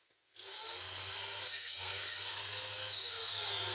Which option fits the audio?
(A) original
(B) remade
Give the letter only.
B